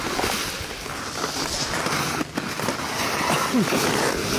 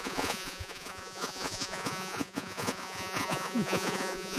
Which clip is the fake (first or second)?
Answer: second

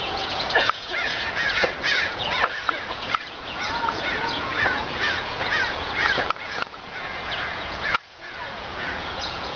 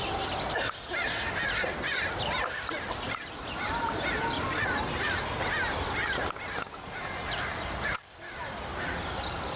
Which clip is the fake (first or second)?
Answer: first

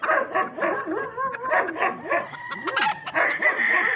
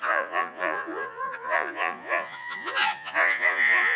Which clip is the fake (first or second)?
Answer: second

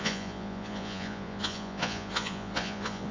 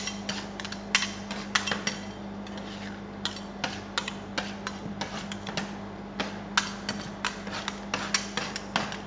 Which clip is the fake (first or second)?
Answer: first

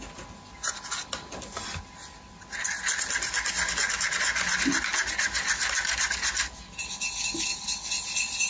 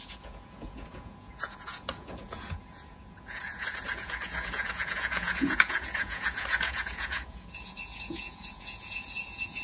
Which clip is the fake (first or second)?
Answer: second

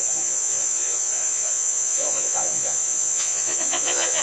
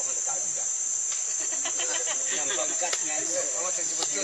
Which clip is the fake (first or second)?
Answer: first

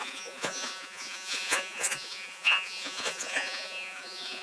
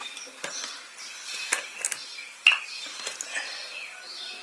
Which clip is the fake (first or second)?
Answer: first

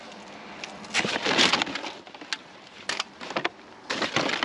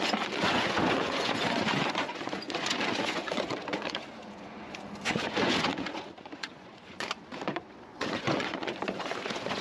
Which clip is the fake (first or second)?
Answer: second